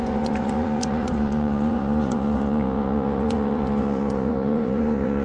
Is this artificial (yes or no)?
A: yes